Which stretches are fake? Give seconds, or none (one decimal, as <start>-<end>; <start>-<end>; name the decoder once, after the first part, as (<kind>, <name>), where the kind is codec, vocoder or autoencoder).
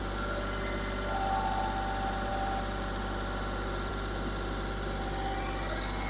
none